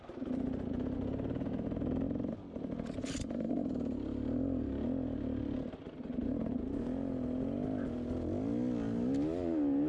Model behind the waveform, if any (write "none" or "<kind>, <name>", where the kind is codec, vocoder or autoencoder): none